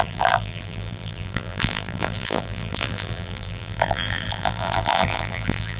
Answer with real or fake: fake